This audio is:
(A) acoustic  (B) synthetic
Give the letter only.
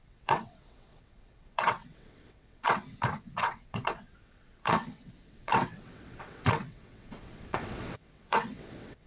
B